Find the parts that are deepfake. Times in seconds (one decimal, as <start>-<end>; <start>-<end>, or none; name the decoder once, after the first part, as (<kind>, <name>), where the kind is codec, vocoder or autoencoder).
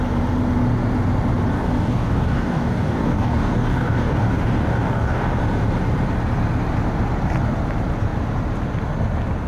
1.5-5.4 (codec, DAC)